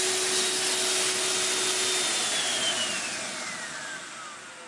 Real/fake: real